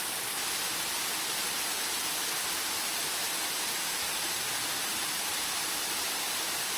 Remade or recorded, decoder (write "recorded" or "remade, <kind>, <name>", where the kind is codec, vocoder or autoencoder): remade, vocoder, BigVGAN v2